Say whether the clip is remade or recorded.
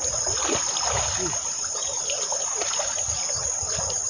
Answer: recorded